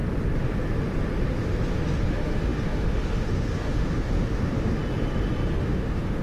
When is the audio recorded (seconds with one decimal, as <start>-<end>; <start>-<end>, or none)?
0.0-2.0; 4.8-5.5